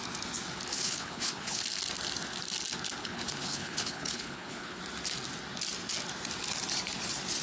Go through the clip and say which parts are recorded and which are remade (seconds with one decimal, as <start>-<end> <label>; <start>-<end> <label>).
0.0-0.7 recorded; 0.7-1.6 remade; 1.6-3.0 recorded; 3.0-4.8 remade; 4.8-7.4 recorded